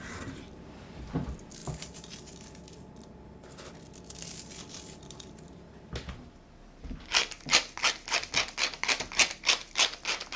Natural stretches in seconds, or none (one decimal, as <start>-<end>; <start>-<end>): 0.0-10.4